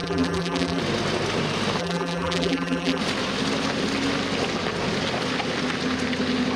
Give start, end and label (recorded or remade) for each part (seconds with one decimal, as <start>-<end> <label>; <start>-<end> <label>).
0.0-0.8 remade; 0.8-1.8 recorded; 1.8-3.0 remade; 3.0-6.6 recorded